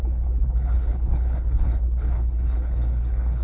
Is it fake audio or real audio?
fake